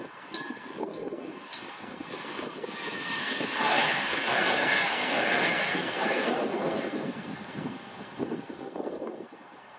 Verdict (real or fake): fake